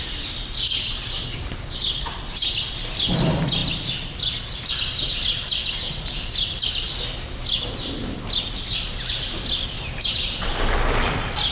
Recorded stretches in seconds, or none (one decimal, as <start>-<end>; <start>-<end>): 0.0-11.5